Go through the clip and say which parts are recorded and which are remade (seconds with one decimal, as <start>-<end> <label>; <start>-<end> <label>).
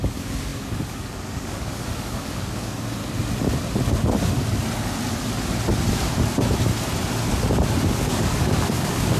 0.0-3.0 remade; 3.0-7.9 recorded; 7.9-9.2 remade